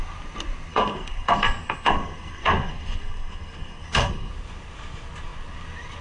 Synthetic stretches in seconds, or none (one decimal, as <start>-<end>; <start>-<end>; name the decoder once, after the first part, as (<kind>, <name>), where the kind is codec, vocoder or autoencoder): 0.7-4.3 (codec, SNAC)